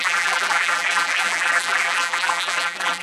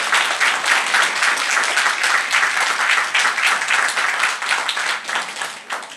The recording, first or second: second